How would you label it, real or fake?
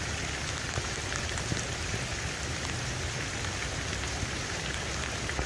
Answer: fake